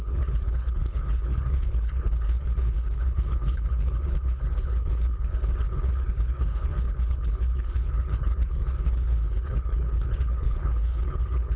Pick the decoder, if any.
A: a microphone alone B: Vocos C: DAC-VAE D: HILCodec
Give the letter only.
D